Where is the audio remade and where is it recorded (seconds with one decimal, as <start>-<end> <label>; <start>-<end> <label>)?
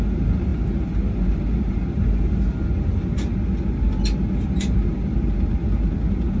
0.0-6.4 recorded